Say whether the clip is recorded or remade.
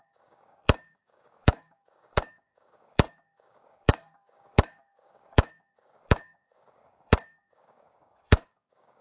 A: remade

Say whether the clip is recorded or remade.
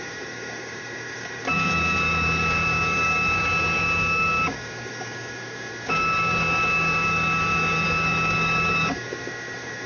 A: remade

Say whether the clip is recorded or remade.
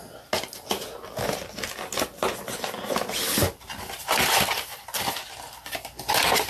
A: recorded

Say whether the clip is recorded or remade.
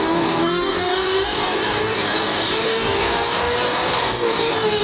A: remade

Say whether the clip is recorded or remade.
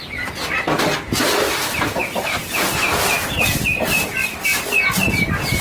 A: recorded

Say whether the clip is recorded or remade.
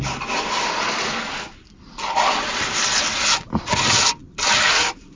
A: recorded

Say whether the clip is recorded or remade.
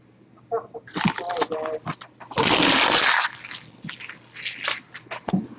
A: recorded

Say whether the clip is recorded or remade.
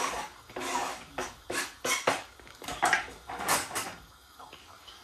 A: remade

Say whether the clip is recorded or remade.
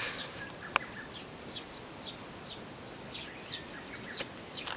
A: recorded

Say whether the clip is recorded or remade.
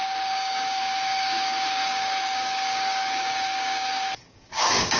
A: remade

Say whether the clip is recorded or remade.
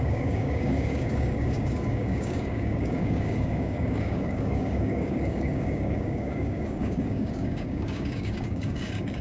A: remade